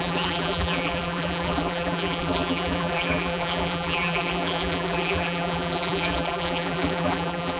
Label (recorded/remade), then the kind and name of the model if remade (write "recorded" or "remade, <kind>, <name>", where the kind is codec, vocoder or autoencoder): remade, vocoder, BigVGAN v2